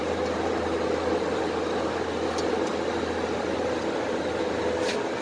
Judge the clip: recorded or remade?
recorded